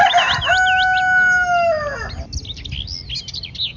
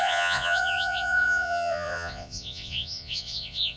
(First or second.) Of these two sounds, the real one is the first